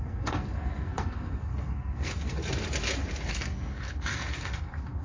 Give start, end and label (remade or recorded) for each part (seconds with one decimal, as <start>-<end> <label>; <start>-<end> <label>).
0.0-2.4 remade; 2.4-3.3 recorded; 3.3-5.0 remade